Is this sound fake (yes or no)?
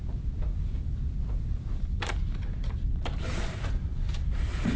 no